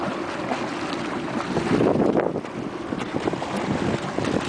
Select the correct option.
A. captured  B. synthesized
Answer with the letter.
A